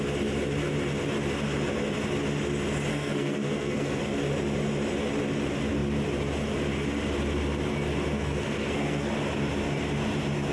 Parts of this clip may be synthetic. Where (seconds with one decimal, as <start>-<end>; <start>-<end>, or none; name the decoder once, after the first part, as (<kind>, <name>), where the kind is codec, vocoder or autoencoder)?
2.9-4.0 (codec, SNAC); 8.1-9.1